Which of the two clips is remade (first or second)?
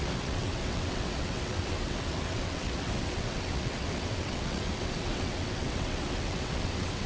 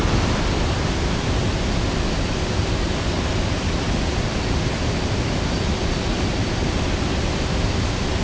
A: first